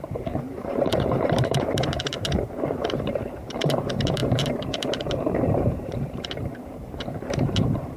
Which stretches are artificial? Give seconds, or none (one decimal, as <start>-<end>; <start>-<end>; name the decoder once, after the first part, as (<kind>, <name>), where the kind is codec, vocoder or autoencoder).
0.0-8.0 (vocoder, BigVGAN v2)